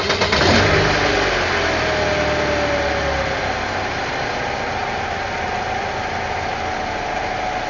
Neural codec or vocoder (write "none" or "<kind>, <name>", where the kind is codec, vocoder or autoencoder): none